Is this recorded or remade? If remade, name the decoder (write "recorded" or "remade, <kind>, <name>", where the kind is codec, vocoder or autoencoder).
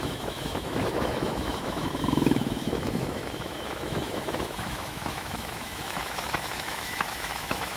remade, autoencoder, DAC-VAE